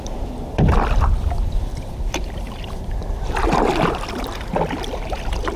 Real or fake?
fake